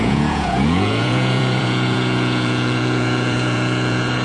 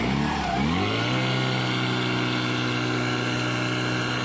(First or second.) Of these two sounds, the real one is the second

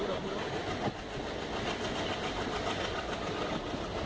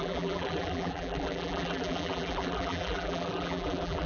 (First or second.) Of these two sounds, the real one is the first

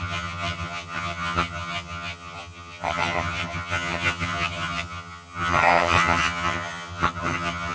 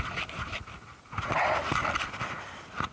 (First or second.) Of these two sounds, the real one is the second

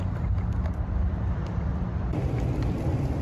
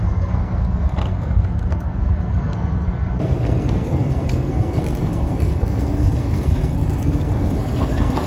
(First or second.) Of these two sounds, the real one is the first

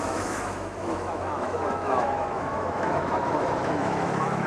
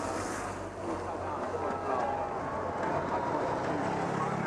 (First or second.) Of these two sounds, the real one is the second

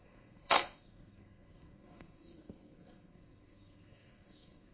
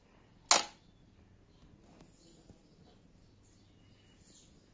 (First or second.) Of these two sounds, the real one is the second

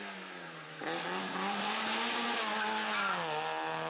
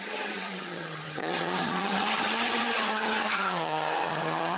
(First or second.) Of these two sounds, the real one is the first